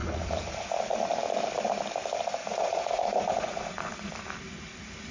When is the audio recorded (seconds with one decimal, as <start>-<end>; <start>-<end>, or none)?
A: 0.7-2.4; 4.1-5.1